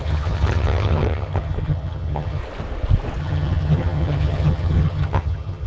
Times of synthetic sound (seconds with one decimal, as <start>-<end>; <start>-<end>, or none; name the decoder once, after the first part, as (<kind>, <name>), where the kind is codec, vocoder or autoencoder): 0.0-2.4 (vocoder, HiFi-GAN); 3.2-5.7